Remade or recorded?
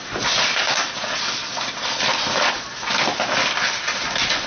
recorded